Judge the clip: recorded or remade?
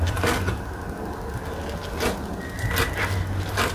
recorded